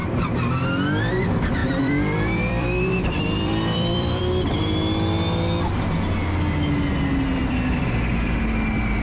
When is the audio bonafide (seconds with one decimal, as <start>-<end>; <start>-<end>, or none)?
0.6-1.6; 4.2-7.4; 8.4-9.0